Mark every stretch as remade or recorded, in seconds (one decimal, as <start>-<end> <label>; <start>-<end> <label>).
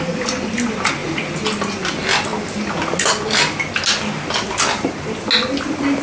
0.0-6.0 recorded